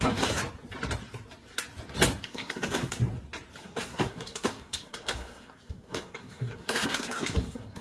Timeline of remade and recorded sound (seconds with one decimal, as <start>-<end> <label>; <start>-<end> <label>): 0.0-0.4 remade; 0.4-2.2 recorded; 2.2-3.0 remade; 3.0-3.6 recorded; 3.6-7.8 remade